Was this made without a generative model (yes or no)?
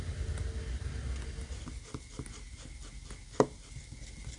yes